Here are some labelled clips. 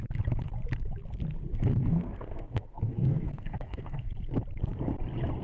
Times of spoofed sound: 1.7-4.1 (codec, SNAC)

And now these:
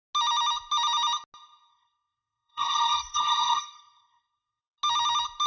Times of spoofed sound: 1.7-4.6 (codec, SNAC)